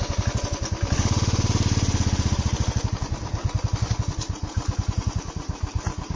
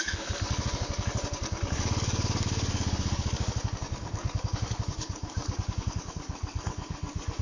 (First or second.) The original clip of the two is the first